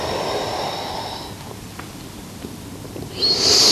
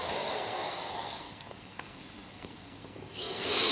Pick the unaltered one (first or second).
first